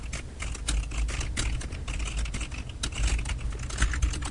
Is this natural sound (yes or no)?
yes